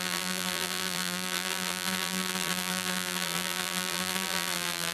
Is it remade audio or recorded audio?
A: remade